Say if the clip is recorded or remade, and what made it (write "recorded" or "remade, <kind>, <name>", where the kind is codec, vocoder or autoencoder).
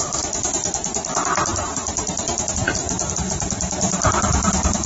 recorded